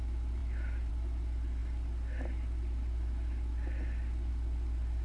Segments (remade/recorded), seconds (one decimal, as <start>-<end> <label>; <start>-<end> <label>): 0.0-5.0 recorded